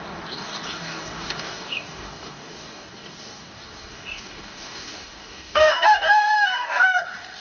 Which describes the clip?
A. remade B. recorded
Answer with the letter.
A